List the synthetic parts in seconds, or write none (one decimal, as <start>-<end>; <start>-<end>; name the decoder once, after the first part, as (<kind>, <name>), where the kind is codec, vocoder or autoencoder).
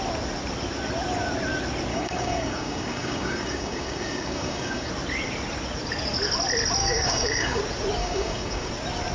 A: 1.9-4.9 (codec, DAC); 6.8-7.6; 8.0-8.7